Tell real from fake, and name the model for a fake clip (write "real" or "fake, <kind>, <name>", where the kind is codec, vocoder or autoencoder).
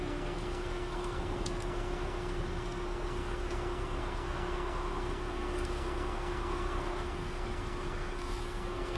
fake, codec, SNAC